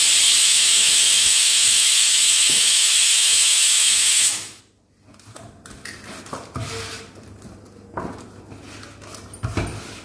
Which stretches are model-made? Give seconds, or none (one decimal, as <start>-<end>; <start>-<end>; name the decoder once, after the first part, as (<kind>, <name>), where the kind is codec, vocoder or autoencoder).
0.4-4.6 (autoencoder, DAC-VAE)